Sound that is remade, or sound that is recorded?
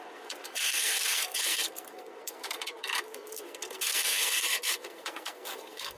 remade